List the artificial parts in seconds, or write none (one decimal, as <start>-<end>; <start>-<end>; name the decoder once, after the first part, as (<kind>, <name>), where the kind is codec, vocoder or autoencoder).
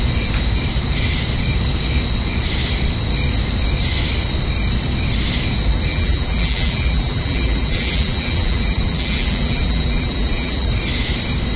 5.9-10.7 (vocoder, BigVGAN v2)